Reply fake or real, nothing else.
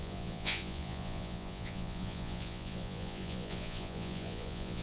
fake